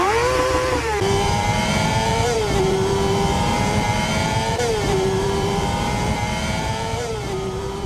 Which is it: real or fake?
fake